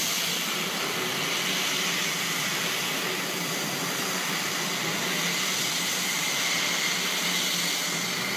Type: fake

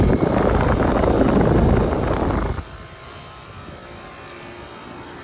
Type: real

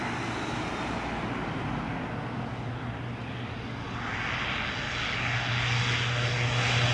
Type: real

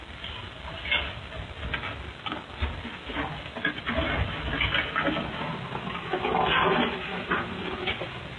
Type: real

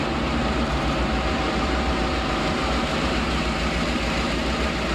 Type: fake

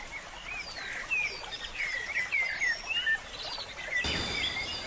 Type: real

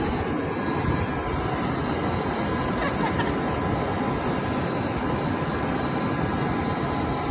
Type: real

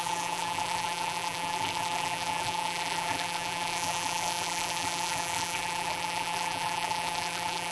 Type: fake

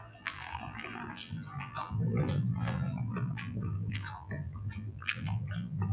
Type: fake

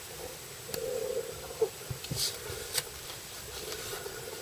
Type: real